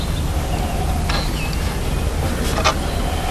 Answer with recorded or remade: recorded